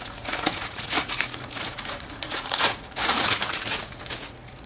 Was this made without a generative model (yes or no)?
no